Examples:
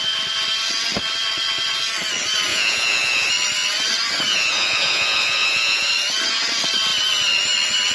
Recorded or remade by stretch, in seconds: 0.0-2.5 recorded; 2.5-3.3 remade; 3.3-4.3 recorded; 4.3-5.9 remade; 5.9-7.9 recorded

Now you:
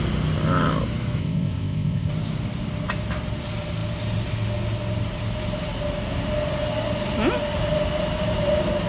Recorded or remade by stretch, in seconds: 0.0-1.2 recorded; 1.2-2.1 remade; 2.1-8.9 recorded

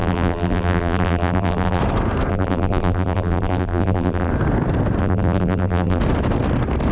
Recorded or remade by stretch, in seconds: 0.0-1.8 remade; 1.8-2.3 recorded; 2.3-4.3 remade; 4.3-5.0 recorded; 5.0-6.0 remade; 6.0-6.9 recorded